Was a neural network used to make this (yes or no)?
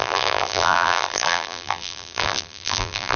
yes